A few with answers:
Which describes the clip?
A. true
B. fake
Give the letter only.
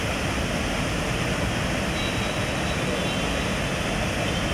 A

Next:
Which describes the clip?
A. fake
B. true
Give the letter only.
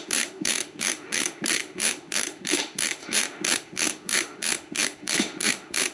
A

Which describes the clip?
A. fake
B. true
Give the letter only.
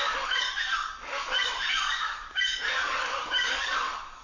A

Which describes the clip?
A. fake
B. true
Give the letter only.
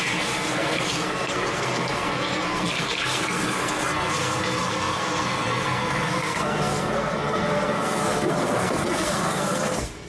A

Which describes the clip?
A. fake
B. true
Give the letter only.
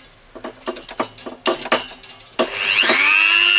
B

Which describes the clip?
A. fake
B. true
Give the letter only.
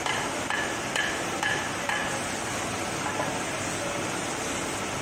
B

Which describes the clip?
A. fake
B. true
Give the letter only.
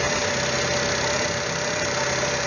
B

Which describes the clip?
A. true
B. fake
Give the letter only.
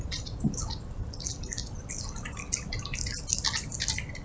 A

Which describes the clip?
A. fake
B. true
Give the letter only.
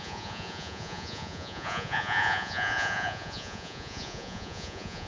A